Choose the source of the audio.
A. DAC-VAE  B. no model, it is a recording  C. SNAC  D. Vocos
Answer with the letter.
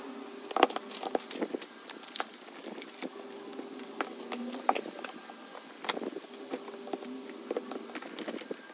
B